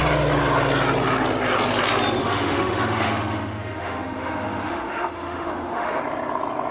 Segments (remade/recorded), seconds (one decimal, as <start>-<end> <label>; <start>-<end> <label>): 0.0-2.2 recorded; 2.2-6.0 remade; 6.0-6.7 recorded